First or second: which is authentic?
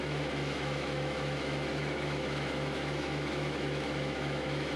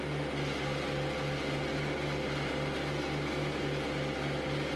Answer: second